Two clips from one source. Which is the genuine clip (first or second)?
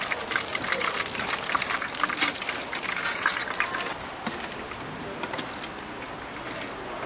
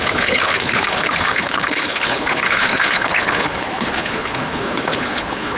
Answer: first